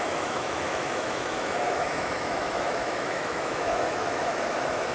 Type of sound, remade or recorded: remade